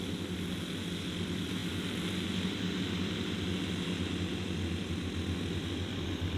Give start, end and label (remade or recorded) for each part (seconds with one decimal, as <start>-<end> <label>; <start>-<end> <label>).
0.0-6.4 recorded